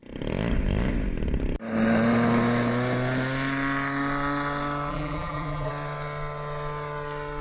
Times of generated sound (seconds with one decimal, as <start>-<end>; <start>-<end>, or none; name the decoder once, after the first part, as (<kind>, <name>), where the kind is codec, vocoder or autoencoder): 4.9-5.7 (vocoder, BigVGAN v2)